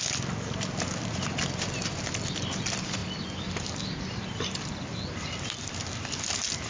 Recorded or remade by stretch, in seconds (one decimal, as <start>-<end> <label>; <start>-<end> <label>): 0.0-6.7 recorded